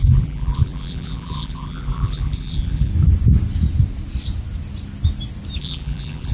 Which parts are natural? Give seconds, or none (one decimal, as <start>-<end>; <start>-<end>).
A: 2.9-5.6